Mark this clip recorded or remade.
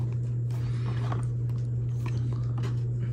recorded